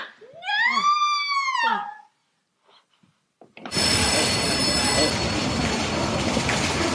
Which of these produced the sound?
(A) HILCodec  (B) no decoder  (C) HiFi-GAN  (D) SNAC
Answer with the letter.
B